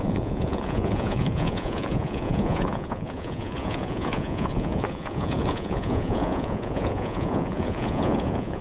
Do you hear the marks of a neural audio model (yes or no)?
yes